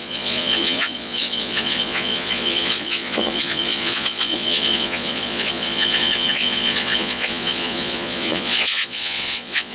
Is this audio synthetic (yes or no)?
yes